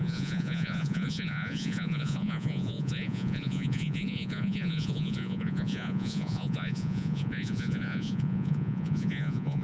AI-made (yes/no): yes